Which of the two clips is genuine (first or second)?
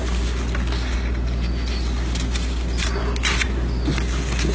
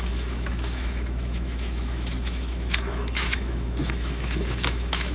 first